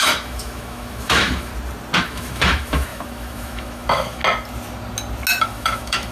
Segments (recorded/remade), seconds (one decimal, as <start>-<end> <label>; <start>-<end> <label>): 0.0-1.5 remade; 1.5-2.0 recorded; 2.0-4.2 remade; 4.2-5.4 recorded; 5.4-6.1 remade